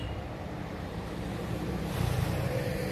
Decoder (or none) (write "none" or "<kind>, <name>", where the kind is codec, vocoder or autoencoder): vocoder, BigVGAN v2